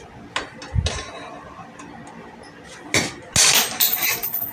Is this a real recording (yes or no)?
yes